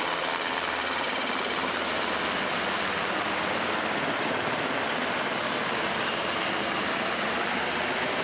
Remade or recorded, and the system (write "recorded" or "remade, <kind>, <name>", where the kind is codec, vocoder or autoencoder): recorded